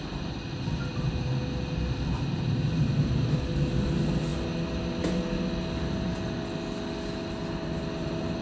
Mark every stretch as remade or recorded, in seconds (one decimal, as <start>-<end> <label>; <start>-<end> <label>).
0.0-8.4 recorded